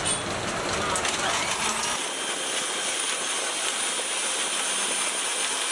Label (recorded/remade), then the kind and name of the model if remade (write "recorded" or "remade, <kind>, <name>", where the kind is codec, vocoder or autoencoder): recorded